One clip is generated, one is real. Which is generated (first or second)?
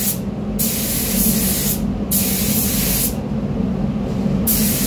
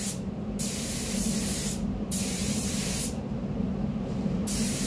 second